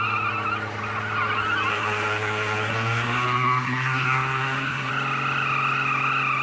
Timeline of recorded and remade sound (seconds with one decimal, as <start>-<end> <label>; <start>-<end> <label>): 0.0-1.7 recorded; 1.7-4.9 remade; 4.9-6.4 recorded